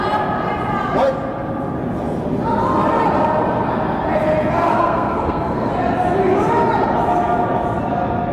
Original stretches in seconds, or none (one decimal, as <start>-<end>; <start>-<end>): 0.0-4.7; 5.7-8.3